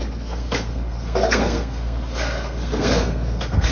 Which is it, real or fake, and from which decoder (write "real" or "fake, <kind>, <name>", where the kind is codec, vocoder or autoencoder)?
fake, codec, SNAC